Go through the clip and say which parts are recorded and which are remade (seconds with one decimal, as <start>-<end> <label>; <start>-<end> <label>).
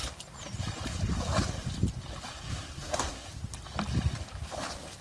0.0-2.3 recorded; 2.3-3.3 remade; 3.3-5.0 recorded